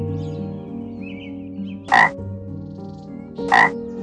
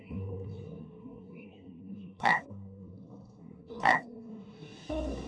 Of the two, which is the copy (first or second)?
second